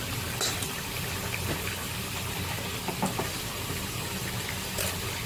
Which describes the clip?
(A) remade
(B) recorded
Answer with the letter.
B